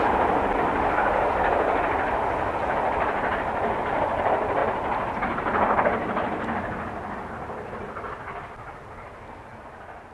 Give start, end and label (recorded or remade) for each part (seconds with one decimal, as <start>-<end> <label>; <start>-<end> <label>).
0.0-10.1 recorded

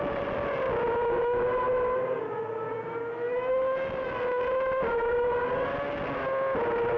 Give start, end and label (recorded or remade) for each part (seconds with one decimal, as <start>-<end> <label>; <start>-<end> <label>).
0.0-7.0 recorded

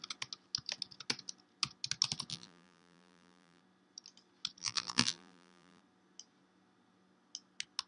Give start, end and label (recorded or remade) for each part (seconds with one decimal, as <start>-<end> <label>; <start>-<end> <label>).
0.0-2.3 recorded; 2.3-3.6 remade; 3.6-4.6 recorded; 4.6-5.8 remade; 5.8-7.9 recorded

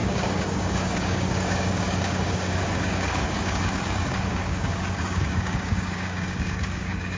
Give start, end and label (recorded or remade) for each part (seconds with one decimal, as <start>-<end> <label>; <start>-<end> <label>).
0.0-7.2 remade

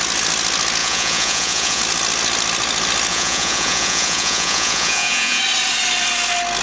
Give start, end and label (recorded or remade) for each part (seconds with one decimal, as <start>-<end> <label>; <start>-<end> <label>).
0.0-0.8 recorded; 0.8-1.8 remade; 1.8-3.1 recorded; 3.1-5.4 remade; 5.4-6.6 recorded

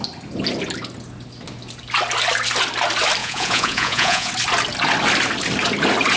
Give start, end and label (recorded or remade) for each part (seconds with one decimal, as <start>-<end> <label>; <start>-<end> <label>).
0.0-3.2 recorded; 3.2-4.3 remade; 4.3-6.2 recorded